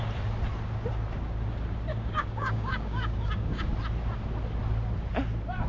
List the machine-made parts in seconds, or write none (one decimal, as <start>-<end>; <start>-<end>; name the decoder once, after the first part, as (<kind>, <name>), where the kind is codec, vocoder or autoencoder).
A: 1.9-3.7 (codec, DAC)